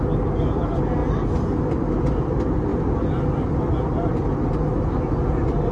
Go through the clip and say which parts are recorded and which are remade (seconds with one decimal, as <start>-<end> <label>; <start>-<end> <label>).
0.0-5.7 recorded